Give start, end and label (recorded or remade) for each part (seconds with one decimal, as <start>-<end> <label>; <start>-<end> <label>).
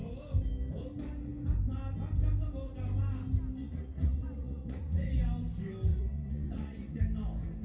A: 0.0-3.6 recorded; 3.6-5.2 remade; 5.2-5.9 recorded; 5.9-7.0 remade; 7.0-7.6 recorded